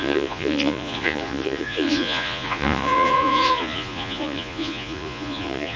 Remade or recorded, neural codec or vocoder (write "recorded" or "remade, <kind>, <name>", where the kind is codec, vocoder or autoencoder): remade, vocoder, Vocos